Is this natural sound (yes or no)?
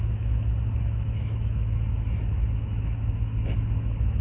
no